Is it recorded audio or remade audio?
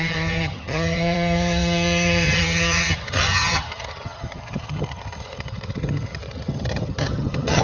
remade